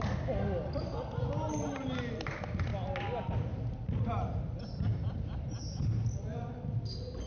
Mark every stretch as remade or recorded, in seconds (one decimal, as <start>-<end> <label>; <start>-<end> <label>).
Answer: 0.0-7.3 recorded